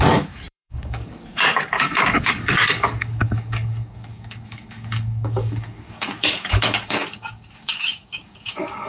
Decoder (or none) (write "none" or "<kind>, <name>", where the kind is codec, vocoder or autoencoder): codec, DAC